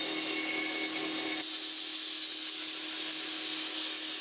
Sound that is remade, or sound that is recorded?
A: recorded